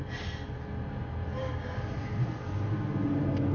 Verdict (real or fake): real